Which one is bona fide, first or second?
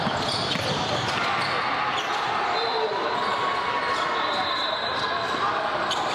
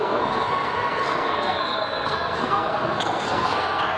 first